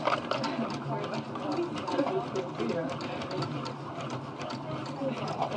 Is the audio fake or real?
real